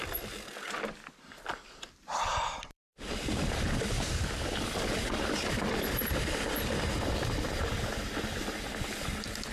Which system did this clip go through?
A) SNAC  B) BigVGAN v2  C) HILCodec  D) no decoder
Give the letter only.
B